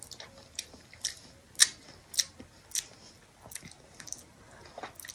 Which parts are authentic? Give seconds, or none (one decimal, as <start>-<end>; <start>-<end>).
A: 0.0-5.1